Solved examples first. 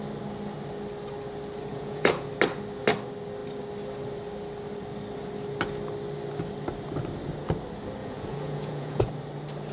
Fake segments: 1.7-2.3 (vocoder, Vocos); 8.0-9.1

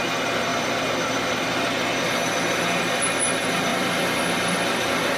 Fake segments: 3.7-4.4 (vocoder, BigVGAN v2)

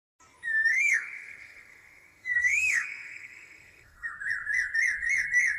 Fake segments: 0.7-4.1 (codec, SNAC)

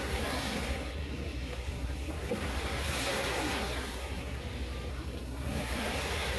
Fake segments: 0.0-4.4 (codec, SNAC); 4.9-6.4

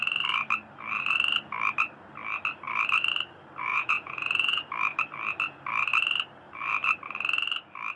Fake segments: 3.7-4.7 (vocoder, Vocos)

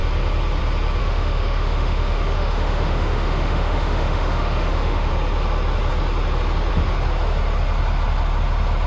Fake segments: 1.0-5.1 (autoencoder, DAC-VAE)

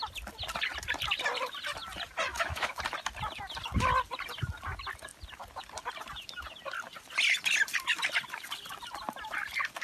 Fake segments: 2.3-2.8 (autoencoder, DAC-VAE)